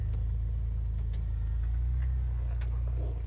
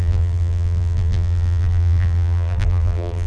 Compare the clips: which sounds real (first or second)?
first